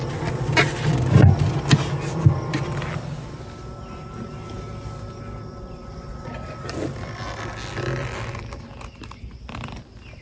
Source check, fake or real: real